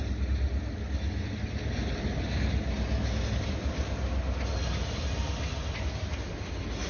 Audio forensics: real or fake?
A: real